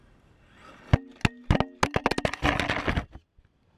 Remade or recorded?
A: recorded